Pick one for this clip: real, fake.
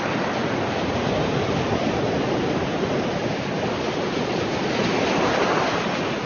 real